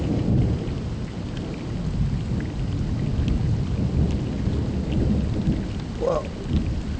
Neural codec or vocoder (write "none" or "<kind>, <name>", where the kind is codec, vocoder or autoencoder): none